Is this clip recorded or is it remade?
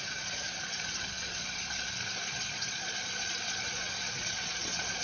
remade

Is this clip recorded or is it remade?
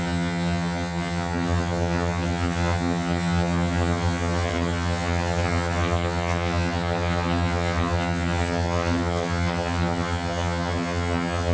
remade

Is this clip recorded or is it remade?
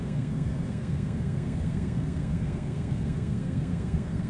remade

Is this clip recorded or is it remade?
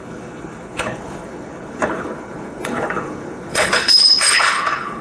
remade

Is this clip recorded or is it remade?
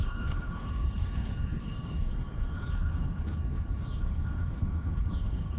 remade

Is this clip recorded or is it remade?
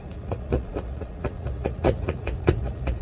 remade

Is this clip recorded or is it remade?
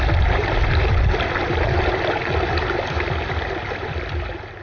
recorded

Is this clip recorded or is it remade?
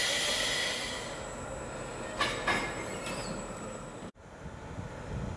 recorded